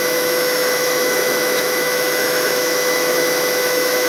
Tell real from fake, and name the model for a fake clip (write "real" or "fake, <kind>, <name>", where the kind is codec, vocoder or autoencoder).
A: fake, autoencoder, DAC-VAE